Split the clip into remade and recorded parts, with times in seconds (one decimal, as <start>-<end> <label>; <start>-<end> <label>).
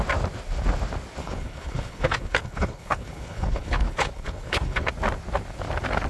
0.0-1.2 recorded; 1.2-4.9 remade; 4.9-6.1 recorded